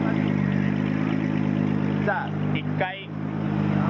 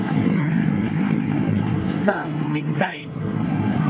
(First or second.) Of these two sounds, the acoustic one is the first